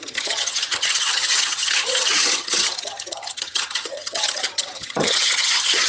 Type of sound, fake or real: fake